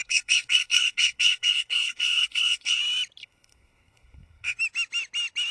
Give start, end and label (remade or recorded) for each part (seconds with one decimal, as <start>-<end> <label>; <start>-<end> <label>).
0.0-2.8 remade; 2.8-3.2 recorded; 3.2-4.6 remade; 4.6-5.5 recorded